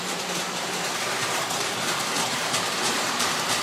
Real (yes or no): no